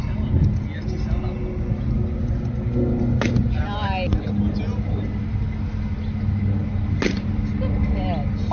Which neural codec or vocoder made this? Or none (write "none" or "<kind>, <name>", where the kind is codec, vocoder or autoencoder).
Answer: none